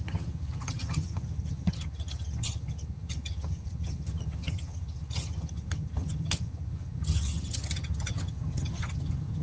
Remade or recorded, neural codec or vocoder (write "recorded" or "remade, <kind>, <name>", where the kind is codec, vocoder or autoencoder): remade, vocoder, HiFi-GAN